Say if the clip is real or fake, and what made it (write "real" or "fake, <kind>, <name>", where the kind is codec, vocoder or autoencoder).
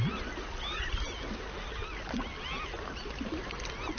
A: real